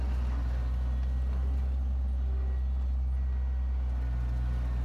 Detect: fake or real real